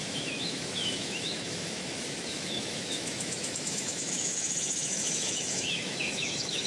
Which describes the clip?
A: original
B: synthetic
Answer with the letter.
B